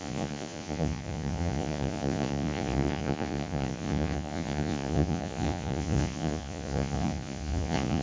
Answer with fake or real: fake